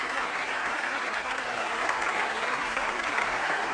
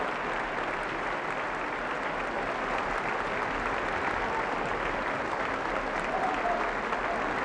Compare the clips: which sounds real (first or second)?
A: second